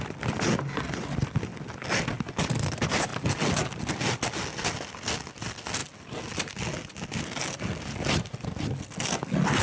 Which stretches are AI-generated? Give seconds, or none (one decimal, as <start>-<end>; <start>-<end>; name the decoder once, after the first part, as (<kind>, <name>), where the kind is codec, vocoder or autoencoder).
none

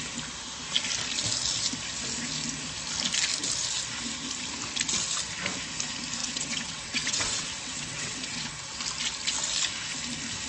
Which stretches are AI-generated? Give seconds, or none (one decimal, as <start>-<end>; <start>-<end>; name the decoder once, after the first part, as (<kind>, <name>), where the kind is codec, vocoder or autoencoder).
6.2-8.8 (vocoder, WaveNeXt)

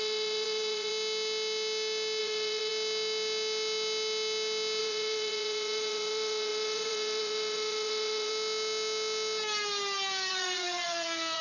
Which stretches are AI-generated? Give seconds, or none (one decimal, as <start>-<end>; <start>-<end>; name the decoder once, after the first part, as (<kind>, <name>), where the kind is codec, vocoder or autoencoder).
0.0-0.9 (vocoder, Vocos); 2.2-2.7; 4.8-8.3; 10.3-11.4